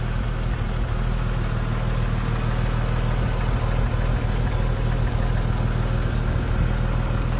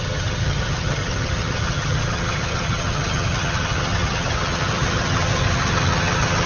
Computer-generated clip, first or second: second